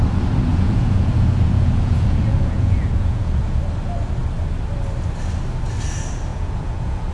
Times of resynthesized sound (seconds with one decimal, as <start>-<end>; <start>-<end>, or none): 0.5-3.6; 6.3-7.1